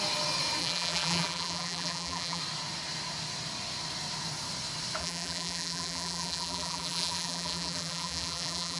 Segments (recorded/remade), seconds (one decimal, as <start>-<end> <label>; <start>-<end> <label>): 0.0-0.6 recorded; 0.6-2.4 remade; 2.4-5.0 recorded; 5.0-8.8 remade